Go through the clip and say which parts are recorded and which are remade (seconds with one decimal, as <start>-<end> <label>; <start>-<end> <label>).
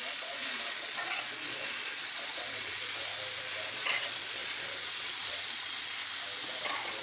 0.0-3.1 remade; 3.1-3.7 recorded; 3.7-6.0 remade; 6.0-6.6 recorded; 6.6-7.0 remade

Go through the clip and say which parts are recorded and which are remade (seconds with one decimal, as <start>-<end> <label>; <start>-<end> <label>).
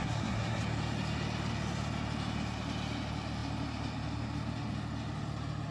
0.0-0.6 remade; 0.6-5.7 recorded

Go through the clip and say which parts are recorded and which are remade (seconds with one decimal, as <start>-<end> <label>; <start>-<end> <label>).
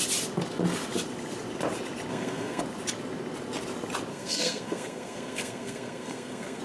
0.0-2.1 recorded; 2.1-2.6 remade; 2.6-4.1 recorded; 4.1-6.6 remade